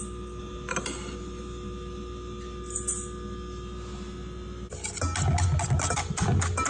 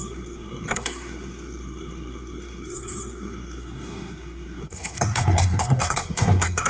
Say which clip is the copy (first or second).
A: second